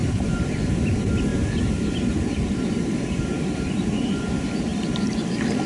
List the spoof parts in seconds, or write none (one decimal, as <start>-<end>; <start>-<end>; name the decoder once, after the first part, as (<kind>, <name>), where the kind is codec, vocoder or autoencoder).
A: 0.0-0.8 (vocoder, BigVGAN v2); 1.3-4.2; 4.7-5.3